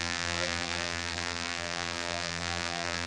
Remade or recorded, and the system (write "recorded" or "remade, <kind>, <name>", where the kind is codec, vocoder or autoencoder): remade, vocoder, BigVGAN v2